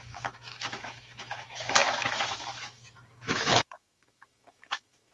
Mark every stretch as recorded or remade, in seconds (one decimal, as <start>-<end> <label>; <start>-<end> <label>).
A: 0.0-5.1 remade